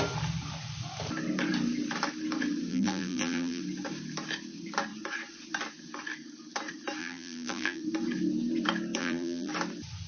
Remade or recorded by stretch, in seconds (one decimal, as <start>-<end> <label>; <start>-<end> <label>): 0.0-2.7 recorded; 2.7-3.6 remade; 3.6-7.0 recorded; 7.0-7.8 remade; 7.8-9.0 recorded; 9.0-9.5 remade; 9.5-10.1 recorded

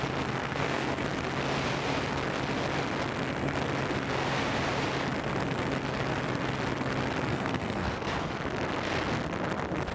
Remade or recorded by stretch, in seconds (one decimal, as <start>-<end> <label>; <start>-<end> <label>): 0.0-0.4 recorded; 0.4-1.0 remade; 1.0-7.3 recorded; 7.3-8.1 remade; 8.1-9.9 recorded